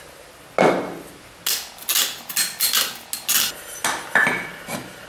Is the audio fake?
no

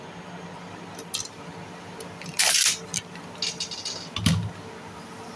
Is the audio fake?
no